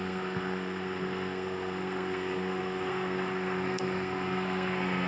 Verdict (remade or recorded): remade